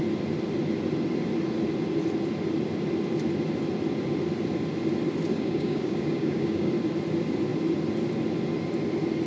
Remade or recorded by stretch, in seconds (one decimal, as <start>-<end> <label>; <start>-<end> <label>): 0.0-5.3 recorded; 5.3-6.7 remade; 6.7-9.3 recorded